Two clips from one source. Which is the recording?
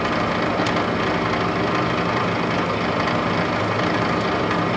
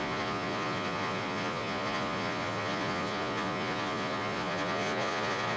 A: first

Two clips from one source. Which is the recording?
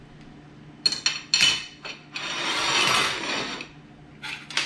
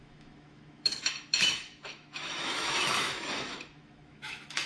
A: first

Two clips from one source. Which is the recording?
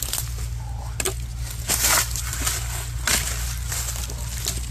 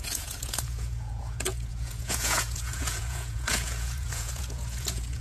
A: first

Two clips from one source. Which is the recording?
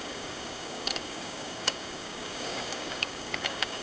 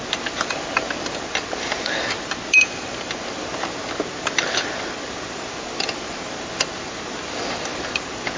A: second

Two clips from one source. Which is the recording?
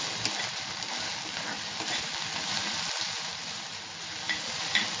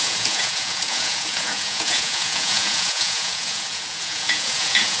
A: first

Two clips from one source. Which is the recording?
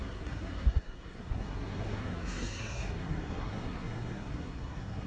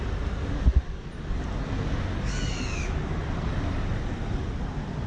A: second